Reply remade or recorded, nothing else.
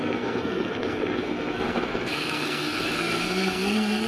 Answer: remade